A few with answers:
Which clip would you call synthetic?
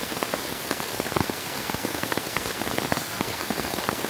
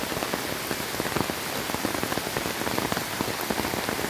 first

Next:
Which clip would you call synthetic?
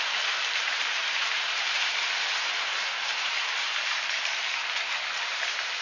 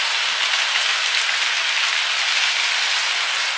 first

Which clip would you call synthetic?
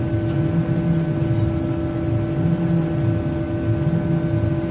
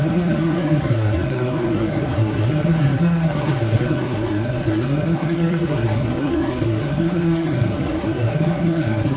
second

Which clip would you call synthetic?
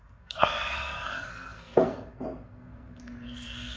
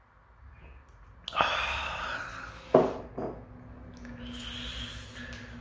first